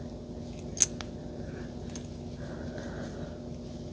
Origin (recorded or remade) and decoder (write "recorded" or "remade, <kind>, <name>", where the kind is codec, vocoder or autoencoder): recorded